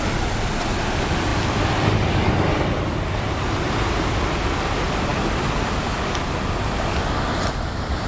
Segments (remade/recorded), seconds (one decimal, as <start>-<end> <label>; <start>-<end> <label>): 0.0-8.1 recorded